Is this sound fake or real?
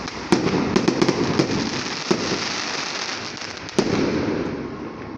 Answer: real